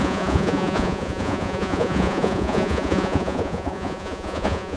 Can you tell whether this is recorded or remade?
remade